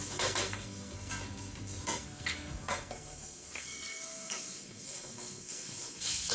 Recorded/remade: remade